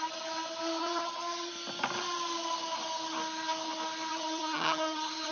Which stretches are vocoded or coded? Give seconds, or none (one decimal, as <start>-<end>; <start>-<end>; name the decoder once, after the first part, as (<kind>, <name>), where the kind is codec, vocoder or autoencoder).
0.8-1.5 (vocoder, HiFi-GAN); 4.1-5.3

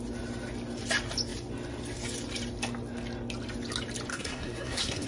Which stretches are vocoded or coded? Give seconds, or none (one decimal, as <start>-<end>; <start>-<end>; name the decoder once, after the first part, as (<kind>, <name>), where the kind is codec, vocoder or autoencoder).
4.1-5.1 (codec, SNAC)

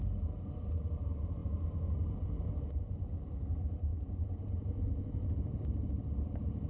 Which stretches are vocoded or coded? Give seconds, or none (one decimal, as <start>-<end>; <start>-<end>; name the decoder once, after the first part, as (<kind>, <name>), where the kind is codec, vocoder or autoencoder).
none

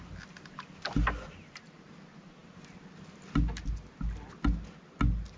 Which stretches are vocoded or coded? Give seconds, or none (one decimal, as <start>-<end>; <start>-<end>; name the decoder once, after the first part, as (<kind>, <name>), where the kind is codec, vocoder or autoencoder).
none

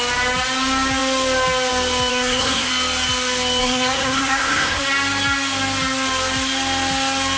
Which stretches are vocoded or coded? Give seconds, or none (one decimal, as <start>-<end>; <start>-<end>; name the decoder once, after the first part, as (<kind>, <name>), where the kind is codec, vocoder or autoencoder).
2.1-2.7 (codec, SNAC); 3.6-4.8

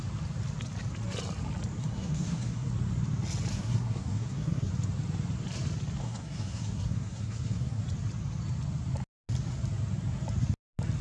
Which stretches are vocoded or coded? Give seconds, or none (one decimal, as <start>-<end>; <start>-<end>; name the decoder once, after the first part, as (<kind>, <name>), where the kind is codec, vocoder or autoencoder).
1.8-2.7 (codec, SNAC); 3.5-4.7; 6.0-7.8